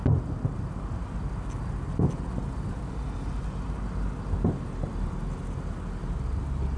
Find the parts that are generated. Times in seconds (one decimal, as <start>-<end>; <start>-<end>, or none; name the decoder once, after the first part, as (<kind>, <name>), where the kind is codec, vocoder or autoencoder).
none